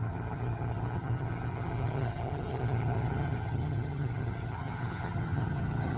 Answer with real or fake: fake